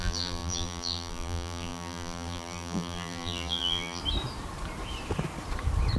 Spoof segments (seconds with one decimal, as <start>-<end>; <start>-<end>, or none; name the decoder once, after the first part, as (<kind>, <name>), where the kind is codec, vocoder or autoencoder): 0.0-4.0 (vocoder, BigVGAN v2)